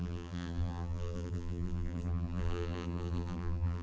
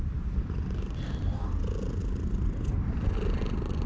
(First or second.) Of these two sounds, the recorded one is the second